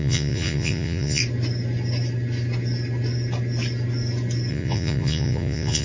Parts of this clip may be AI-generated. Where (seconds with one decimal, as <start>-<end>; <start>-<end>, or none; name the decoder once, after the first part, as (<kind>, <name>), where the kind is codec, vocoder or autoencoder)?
0.0-1.2 (vocoder, Vocos); 4.5-5.8